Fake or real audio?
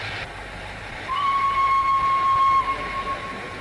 real